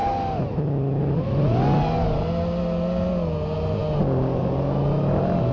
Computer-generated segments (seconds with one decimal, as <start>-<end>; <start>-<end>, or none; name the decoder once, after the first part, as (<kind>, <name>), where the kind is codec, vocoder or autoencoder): none